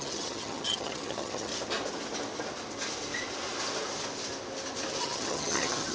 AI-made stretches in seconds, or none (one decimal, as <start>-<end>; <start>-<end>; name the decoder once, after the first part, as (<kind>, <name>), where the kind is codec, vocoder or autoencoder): 0.0-1.5 (vocoder, HiFi-GAN); 5.0-5.9